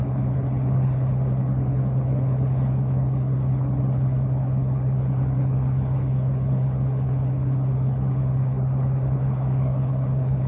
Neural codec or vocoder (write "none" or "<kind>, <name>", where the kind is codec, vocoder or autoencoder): codec, HILCodec